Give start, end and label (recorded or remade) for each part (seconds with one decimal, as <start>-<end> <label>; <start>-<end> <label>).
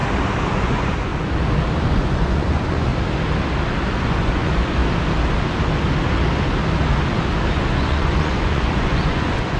0.0-0.5 recorded; 0.5-1.1 remade; 1.1-1.8 recorded; 1.8-2.9 remade; 2.9-4.0 recorded; 4.0-4.8 remade; 4.8-7.5 recorded; 7.5-9.6 remade